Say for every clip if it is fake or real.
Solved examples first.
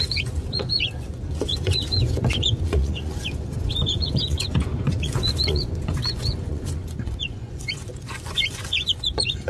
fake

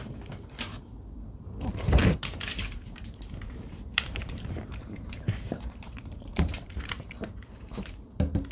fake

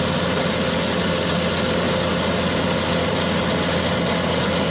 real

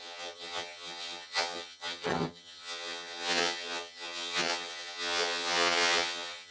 fake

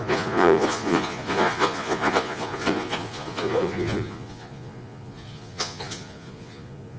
fake